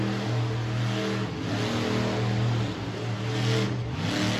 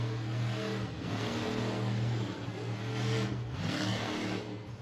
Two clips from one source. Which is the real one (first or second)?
first